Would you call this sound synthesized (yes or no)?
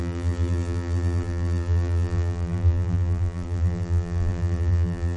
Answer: yes